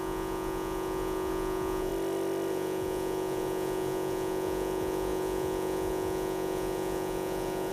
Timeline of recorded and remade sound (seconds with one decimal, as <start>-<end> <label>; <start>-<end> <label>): 0.0-1.9 remade; 1.9-2.5 recorded; 2.5-7.7 remade